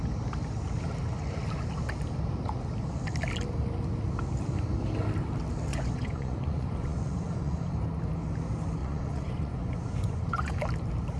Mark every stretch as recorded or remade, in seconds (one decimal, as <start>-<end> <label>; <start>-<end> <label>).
0.0-5.7 recorded; 5.7-7.7 remade; 7.7-8.8 recorded; 8.8-10.6 remade; 10.6-11.2 recorded